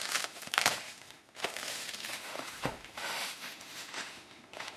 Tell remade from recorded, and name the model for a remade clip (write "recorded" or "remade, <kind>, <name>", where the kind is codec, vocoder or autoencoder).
remade, autoencoder, DAC-VAE